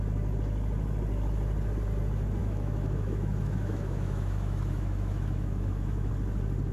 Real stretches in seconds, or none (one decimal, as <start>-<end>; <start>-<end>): 0.0-2.4; 6.1-6.7